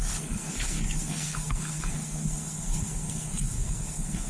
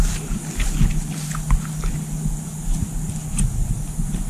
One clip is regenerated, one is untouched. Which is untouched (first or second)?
second